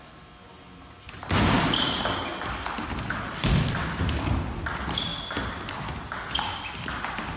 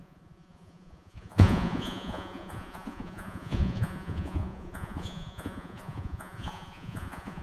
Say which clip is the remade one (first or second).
second